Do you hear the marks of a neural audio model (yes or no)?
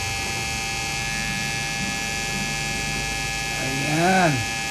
no